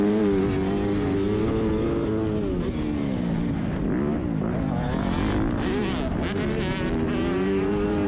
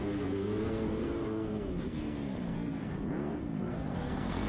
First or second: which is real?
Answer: first